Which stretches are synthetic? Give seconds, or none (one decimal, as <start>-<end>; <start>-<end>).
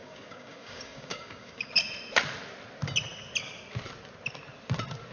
0.0-1.7